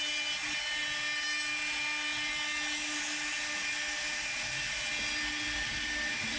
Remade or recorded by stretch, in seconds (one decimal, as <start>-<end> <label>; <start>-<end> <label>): 0.0-6.4 recorded